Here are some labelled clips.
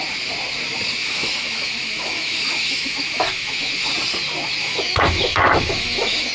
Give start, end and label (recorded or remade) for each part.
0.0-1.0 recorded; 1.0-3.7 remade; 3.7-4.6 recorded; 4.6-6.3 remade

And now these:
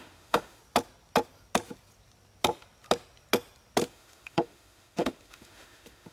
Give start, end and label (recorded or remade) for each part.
0.0-0.6 remade; 0.6-3.9 recorded; 3.9-6.1 remade

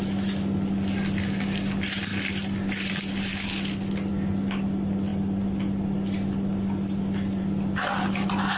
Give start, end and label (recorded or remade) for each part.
0.0-8.6 recorded

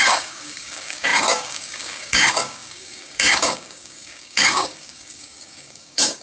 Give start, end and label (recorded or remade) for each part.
0.0-6.2 remade